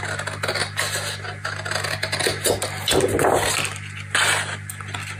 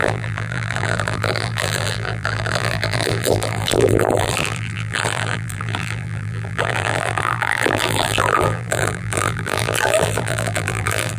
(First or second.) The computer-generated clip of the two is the second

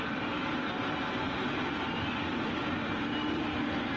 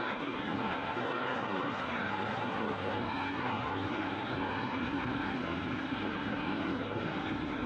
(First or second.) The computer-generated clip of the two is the second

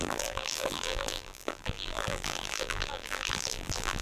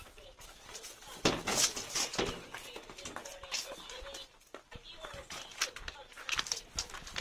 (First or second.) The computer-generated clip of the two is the first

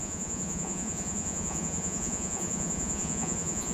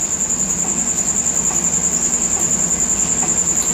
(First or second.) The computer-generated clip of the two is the first